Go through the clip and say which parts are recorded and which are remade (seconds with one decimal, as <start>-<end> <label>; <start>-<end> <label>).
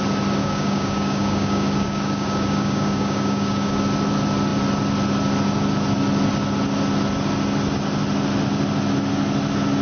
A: 0.0-0.4 recorded; 0.4-3.8 remade; 3.8-9.8 recorded